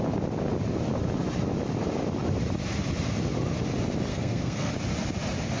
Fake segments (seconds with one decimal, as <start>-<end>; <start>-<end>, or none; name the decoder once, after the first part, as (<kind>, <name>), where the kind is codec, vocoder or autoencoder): 4.1-4.7 (codec, SNAC)